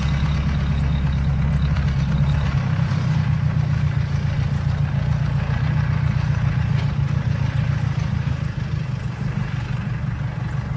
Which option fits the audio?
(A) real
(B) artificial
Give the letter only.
A